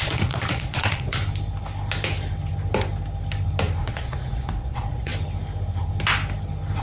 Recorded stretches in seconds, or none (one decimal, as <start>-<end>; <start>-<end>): 1.2-3.8; 5.1-6.8